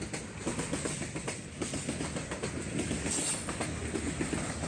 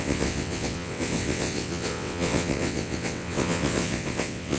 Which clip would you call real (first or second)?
first